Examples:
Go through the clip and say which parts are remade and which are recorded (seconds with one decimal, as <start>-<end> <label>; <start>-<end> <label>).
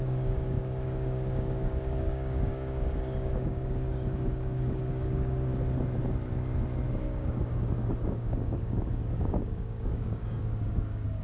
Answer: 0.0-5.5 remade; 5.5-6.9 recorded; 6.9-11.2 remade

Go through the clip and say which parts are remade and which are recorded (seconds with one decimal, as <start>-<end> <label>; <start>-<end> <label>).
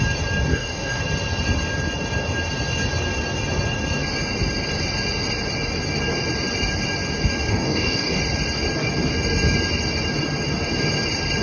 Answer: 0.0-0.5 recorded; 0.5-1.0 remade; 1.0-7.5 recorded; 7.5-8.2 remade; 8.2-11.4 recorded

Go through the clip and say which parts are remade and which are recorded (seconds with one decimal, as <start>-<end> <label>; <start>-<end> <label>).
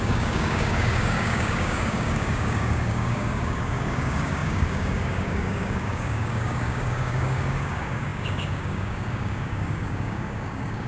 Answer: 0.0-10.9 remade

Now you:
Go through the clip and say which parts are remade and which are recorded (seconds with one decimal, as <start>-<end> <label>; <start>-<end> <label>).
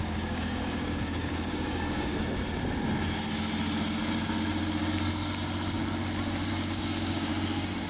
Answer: 0.0-2.1 remade; 2.1-6.5 recorded; 6.5-7.3 remade; 7.3-7.9 recorded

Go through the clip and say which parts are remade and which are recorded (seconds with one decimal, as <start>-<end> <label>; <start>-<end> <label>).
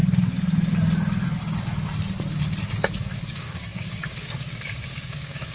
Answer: 0.0-3.3 recorded; 3.3-5.5 remade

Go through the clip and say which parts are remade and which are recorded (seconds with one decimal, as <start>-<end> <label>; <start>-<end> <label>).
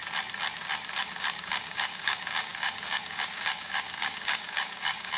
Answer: 0.0-1.0 recorded; 1.0-5.2 remade